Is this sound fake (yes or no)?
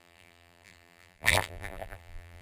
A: yes